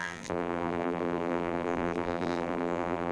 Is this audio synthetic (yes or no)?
yes